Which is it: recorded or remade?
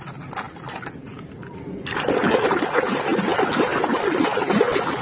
recorded